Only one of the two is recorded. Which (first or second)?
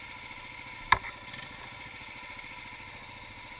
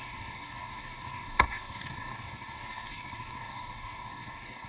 first